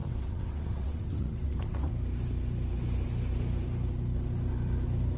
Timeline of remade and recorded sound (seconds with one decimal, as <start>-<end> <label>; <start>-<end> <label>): 0.0-1.9 remade; 1.9-5.2 recorded